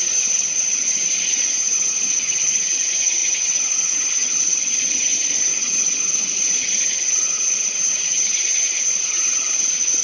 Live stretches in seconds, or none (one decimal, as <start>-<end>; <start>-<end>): none